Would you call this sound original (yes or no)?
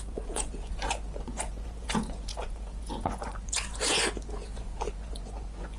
no